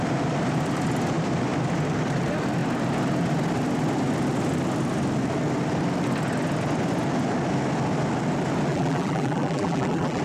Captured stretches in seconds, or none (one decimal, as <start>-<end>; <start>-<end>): 0.0-8.7